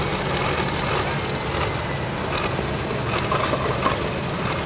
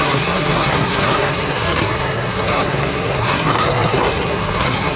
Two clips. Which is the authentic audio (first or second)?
first